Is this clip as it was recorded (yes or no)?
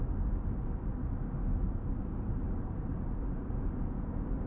yes